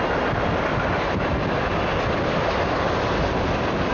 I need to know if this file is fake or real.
real